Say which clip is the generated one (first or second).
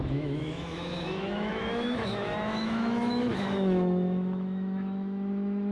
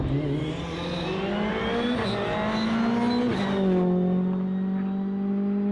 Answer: first